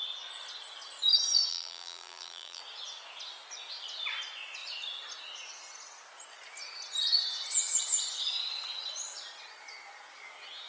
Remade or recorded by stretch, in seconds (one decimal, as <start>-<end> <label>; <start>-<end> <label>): 0.0-1.5 recorded; 1.5-2.6 remade; 2.6-10.7 recorded